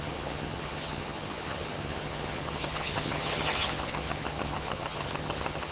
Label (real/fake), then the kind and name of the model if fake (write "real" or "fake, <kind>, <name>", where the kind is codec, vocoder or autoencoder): fake, vocoder, HiFi-GAN